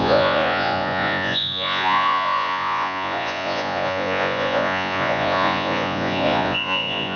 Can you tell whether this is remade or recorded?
remade